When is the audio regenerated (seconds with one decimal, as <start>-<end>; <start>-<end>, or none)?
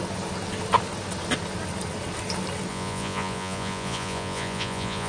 2.7-5.1